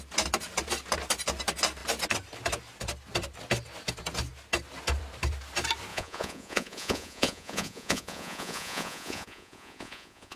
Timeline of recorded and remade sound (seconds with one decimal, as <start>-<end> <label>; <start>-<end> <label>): 0.0-5.9 recorded; 5.9-10.4 remade